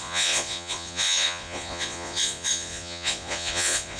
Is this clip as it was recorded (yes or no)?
no